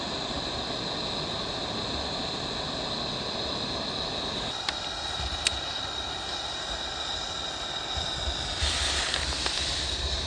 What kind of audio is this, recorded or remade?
recorded